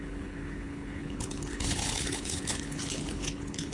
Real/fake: fake